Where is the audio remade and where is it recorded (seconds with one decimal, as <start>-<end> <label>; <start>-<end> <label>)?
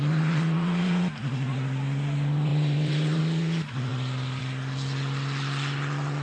0.0-2.5 recorded; 2.5-3.2 remade; 3.2-6.2 recorded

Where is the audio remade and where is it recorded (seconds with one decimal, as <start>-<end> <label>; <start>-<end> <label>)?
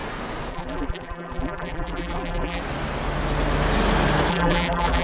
0.0-0.5 recorded; 0.5-2.6 remade; 2.6-4.3 recorded; 4.3-5.0 remade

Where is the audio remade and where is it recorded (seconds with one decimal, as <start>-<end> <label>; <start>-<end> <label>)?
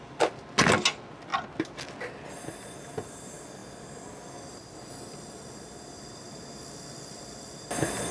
0.0-8.1 recorded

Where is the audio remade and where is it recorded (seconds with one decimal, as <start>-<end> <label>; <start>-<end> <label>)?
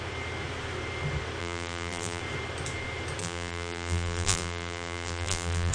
0.0-1.4 recorded; 1.4-2.2 remade; 2.2-3.2 recorded; 3.2-5.7 remade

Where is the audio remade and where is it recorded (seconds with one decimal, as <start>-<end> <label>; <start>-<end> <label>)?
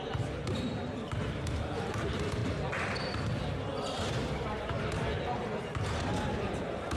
0.0-2.4 remade; 2.4-6.5 recorded; 6.5-7.0 remade